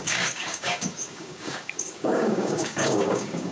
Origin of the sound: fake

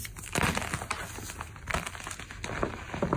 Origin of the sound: real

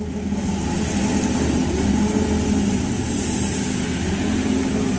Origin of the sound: real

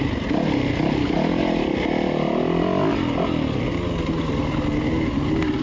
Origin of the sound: real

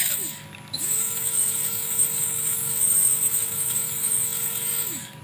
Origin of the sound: fake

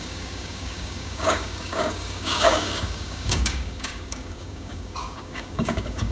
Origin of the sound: fake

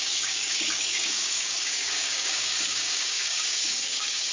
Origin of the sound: fake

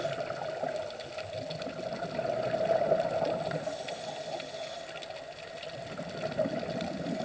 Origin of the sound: real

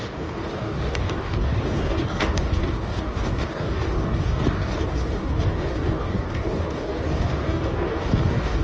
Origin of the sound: fake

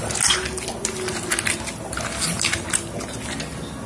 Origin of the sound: real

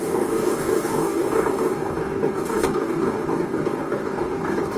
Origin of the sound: fake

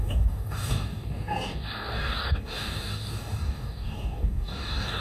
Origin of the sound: fake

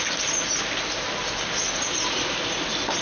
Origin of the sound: real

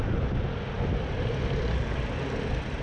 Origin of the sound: real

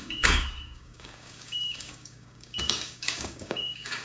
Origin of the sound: fake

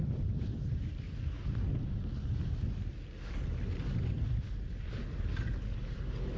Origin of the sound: real